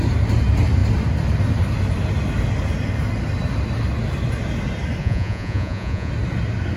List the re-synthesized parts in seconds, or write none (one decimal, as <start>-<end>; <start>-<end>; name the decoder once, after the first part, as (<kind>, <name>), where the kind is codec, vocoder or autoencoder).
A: 5.0-6.1 (vocoder, Vocos)